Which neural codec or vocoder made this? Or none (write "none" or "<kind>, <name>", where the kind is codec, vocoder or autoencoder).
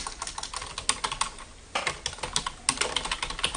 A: none